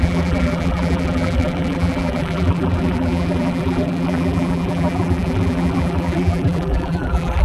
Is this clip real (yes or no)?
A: no